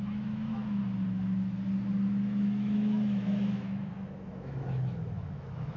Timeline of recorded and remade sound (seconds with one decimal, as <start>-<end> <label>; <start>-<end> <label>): 0.0-0.8 remade; 0.8-2.1 recorded; 2.1-5.8 remade